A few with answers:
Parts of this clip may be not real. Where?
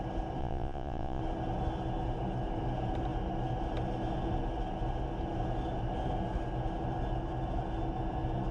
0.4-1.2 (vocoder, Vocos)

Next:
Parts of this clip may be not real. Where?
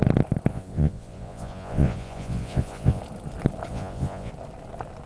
0.5-3.0 (vocoder, Vocos); 3.7-4.3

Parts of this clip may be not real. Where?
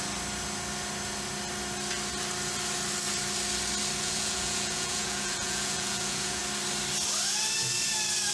4.0-6.4 (vocoder, Vocos)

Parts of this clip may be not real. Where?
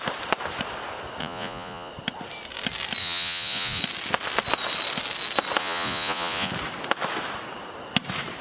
1.2-1.9 (vocoder, Vocos); 3.0-3.8; 5.6-6.5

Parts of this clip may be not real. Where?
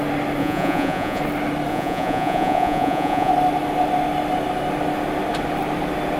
0.4-1.2 (vocoder, Vocos); 1.7-3.3